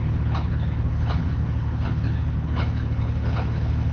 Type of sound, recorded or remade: remade